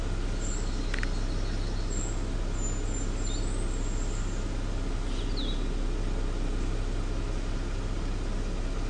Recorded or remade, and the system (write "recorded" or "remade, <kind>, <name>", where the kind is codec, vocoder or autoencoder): recorded